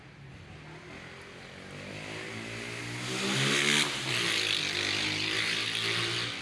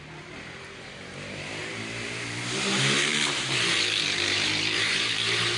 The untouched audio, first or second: first